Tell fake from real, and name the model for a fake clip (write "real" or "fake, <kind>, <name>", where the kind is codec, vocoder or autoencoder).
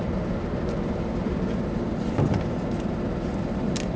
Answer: real